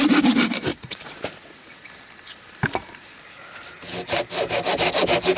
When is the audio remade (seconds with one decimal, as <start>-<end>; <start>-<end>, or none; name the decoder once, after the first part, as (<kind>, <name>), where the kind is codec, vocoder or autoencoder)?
0.7-1.9 (vocoder, Vocos)